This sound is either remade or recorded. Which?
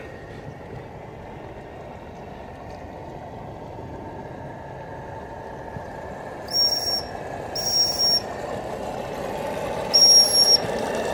recorded